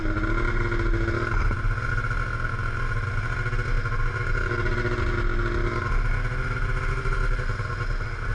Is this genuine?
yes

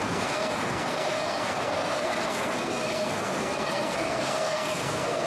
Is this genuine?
no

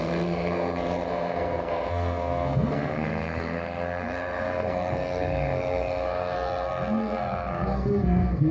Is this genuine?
no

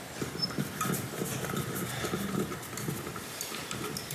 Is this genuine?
yes